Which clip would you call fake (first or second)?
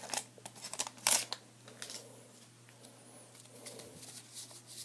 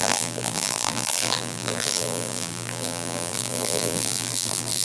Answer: second